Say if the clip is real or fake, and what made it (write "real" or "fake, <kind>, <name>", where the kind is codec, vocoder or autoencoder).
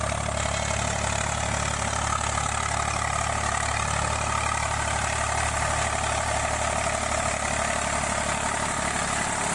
real